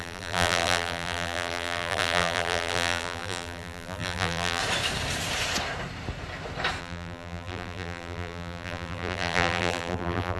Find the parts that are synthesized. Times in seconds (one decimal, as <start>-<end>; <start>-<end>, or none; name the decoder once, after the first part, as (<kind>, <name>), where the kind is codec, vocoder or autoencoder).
0.0-4.6 (vocoder, BigVGAN v2); 6.8-10.4